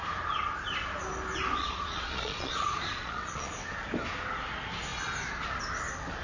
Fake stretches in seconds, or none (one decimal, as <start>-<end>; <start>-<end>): 1.6-3.5